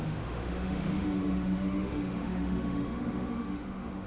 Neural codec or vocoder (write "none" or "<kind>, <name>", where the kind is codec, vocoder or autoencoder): autoencoder, DAC-VAE